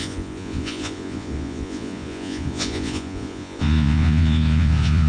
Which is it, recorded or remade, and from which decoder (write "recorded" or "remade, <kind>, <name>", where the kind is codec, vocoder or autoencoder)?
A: remade, vocoder, Vocos